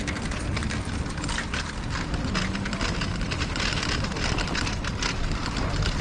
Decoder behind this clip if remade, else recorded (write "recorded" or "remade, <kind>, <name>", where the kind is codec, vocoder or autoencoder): recorded